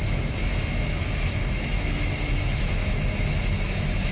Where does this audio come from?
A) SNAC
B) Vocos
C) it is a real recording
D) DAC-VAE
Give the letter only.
D